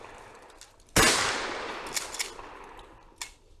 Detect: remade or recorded recorded